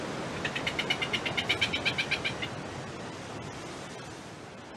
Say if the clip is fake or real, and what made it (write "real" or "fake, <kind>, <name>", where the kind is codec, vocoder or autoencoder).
real